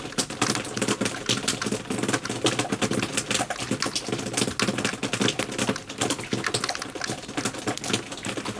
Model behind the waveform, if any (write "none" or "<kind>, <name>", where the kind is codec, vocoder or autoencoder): none